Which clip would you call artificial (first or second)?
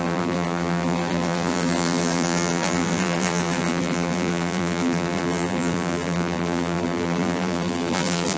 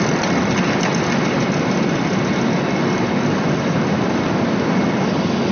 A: first